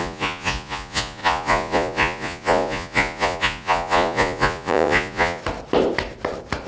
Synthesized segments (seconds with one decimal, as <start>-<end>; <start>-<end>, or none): 0.0-5.4